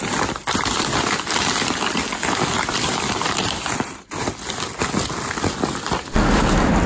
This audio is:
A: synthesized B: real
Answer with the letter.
B